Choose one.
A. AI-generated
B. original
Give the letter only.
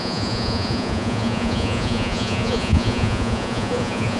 A